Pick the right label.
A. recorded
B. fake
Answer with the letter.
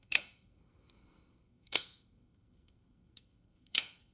B